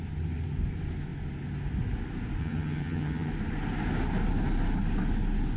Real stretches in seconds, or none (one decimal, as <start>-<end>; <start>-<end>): 0.0-2.4; 3.3-5.6